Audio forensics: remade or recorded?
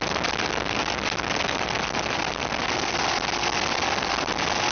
recorded